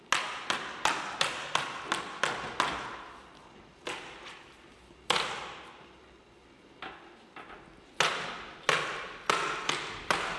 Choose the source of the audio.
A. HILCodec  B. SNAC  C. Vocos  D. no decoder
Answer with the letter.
D